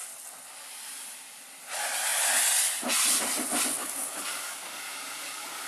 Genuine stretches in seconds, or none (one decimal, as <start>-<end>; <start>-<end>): 0.0-3.8